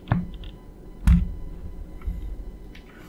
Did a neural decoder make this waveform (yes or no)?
no